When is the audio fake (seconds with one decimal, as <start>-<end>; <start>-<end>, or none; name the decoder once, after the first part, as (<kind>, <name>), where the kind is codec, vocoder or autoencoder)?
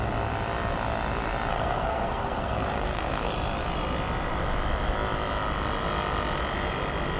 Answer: 1.5-3.3 (codec, SNAC)